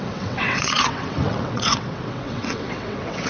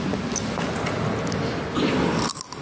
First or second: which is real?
second